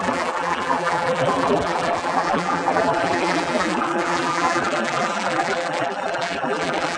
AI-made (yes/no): yes